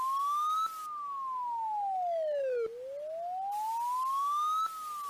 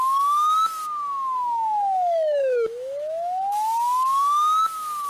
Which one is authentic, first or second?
first